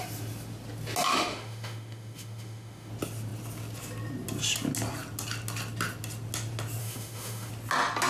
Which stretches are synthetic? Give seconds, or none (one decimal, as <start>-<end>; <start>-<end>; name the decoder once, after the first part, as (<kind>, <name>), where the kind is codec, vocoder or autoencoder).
1.1-2.9 (autoencoder, DAC-VAE); 6.8-7.5